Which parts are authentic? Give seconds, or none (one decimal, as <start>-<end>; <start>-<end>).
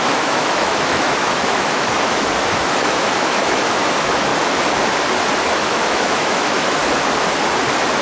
4.3-5.4; 6.8-8.0